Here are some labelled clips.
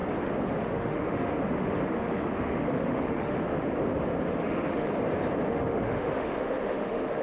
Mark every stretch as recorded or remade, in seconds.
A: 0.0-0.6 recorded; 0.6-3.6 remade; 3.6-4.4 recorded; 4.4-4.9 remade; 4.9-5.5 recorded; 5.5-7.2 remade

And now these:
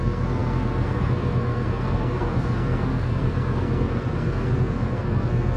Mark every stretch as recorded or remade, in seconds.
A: 0.0-5.6 remade

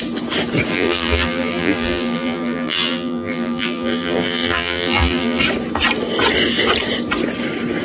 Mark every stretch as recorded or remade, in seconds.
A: 0.0-0.7 recorded; 0.7-5.4 remade; 5.4-7.8 recorded

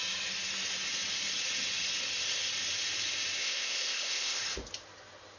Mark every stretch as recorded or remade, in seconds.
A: 0.0-3.4 recorded; 3.4-4.4 remade; 4.4-5.4 recorded

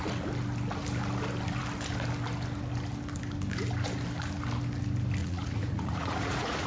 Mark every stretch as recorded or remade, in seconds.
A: 0.0-5.2 recorded; 5.2-6.7 remade

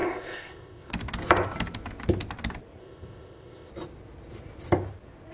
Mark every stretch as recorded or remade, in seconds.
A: 0.0-0.9 remade; 0.9-2.8 recorded; 2.8-3.7 remade; 3.7-5.3 recorded